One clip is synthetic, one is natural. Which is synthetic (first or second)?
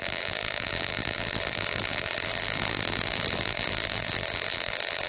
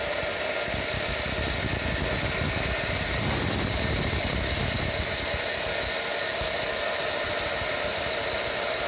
first